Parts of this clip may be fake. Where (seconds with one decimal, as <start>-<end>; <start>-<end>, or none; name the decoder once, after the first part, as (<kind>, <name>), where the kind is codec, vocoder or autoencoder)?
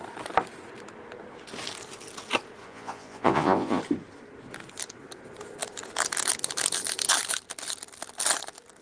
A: 2.6-3.8 (vocoder, Vocos)